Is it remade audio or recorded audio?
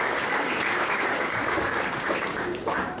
remade